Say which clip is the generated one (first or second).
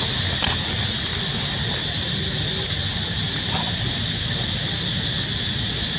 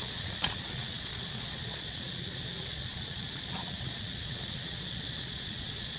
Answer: second